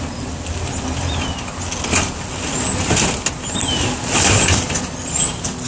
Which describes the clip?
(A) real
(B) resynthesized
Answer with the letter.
A